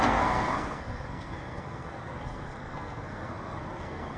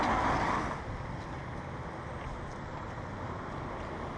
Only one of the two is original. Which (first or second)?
second